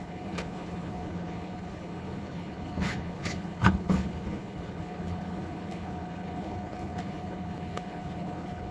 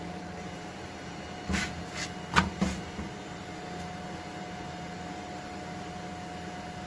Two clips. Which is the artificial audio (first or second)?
first